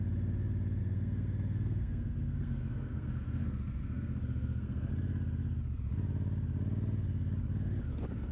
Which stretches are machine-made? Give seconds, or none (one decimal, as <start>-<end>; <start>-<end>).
0.8-4.9